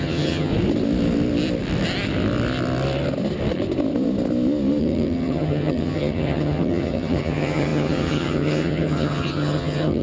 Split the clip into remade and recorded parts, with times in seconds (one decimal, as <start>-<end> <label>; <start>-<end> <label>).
0.0-0.5 remade; 0.5-4.8 recorded; 4.8-10.0 remade